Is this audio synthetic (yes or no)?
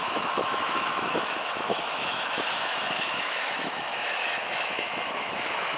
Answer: yes